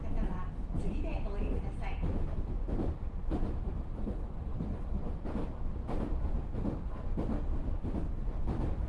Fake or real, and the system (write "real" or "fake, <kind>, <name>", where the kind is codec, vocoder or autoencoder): real